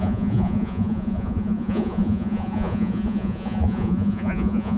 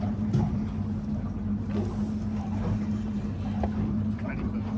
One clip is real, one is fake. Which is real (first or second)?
second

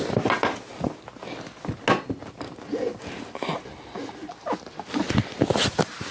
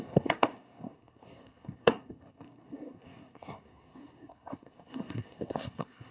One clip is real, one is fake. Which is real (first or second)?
first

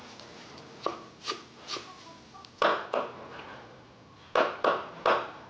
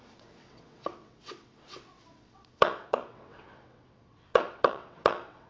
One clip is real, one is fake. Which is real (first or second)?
first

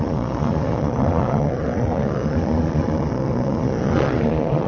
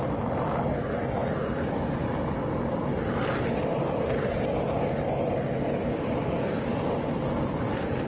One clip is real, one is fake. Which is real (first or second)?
second